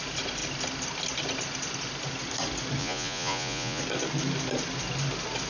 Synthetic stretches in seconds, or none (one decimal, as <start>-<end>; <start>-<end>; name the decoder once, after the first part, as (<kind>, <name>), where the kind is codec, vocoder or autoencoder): 2.8-3.8 (vocoder, Vocos)